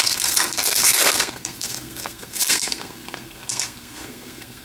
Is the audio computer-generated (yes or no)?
yes